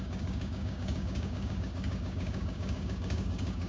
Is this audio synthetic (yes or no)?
yes